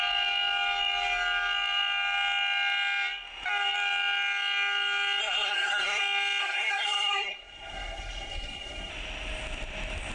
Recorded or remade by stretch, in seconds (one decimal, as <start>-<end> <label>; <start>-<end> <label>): 0.0-5.2 recorded; 5.2-6.0 remade; 6.0-6.4 recorded; 6.4-8.9 remade; 8.9-10.1 recorded